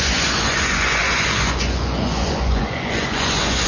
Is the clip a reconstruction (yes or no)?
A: yes